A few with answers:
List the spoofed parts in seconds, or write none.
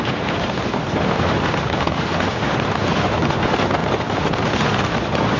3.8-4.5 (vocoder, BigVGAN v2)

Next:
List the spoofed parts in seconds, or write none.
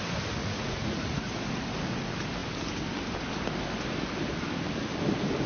0.4-1.5 (vocoder, Vocos)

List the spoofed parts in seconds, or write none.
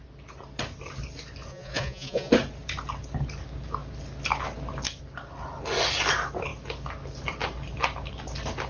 1.5-2.3 (vocoder, Vocos)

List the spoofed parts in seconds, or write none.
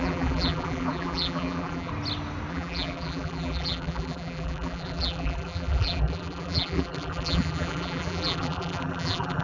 0.0-1.9 (vocoder, BigVGAN v2); 2.5-9.4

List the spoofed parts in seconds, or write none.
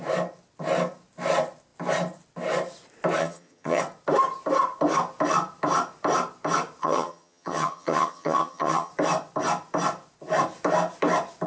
3.2-3.8 (vocoder, HiFi-GAN); 6.8-8.9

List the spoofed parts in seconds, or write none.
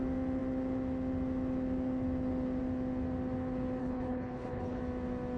3.8-4.8 (codec, HILCodec)